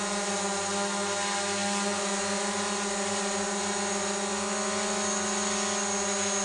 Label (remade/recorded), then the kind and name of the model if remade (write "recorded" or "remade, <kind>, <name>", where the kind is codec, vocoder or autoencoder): recorded